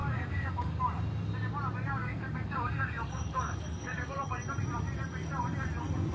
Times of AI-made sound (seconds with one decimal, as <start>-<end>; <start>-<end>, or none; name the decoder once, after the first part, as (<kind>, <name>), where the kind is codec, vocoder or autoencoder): 0.0-0.8 (codec, DAC); 2.0-4.4